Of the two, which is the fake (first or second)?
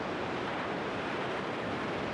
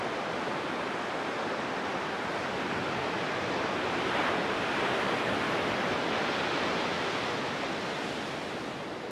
first